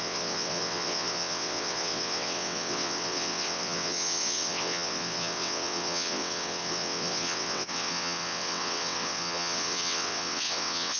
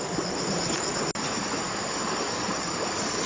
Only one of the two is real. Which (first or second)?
second